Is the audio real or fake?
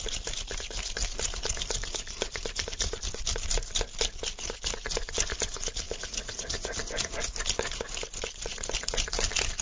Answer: real